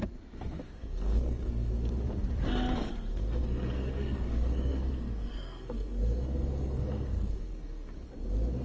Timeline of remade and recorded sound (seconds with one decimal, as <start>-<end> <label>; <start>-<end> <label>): 0.0-0.8 recorded; 0.8-1.7 remade; 1.7-3.1 recorded; 3.1-8.1 remade; 8.1-8.6 recorded